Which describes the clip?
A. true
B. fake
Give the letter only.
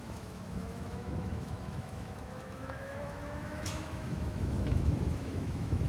B